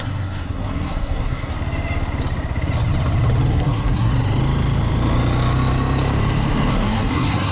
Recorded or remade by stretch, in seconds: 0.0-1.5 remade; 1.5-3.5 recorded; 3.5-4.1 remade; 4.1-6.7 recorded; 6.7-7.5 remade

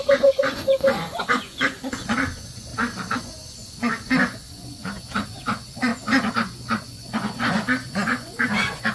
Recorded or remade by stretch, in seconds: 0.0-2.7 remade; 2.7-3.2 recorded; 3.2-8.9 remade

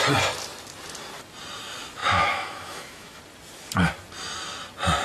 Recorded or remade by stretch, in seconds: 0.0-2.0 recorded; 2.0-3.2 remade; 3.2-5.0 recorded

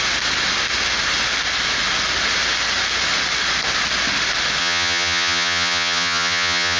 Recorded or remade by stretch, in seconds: 0.0-4.6 recorded; 4.6-6.8 remade

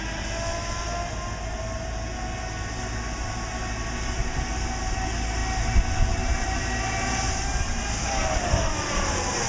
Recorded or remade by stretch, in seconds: 0.0-8.0 recorded; 8.0-8.7 remade; 8.7-9.5 recorded

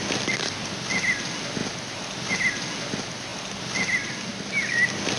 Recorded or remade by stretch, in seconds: 0.0-5.2 recorded